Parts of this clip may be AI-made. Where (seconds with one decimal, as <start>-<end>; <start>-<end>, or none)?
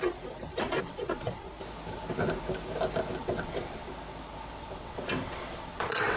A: 0.8-1.5; 3.2-3.9; 4.5-6.2